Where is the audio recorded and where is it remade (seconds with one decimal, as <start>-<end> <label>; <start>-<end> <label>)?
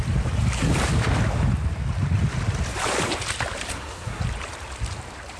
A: 0.0-3.7 recorded; 3.7-4.2 remade; 4.2-5.4 recorded